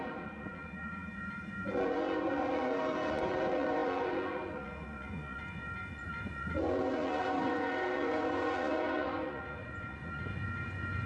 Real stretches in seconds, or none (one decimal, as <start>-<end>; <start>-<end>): none